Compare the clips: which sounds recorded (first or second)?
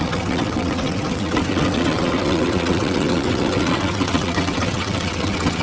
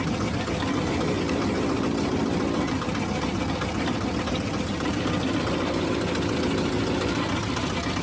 second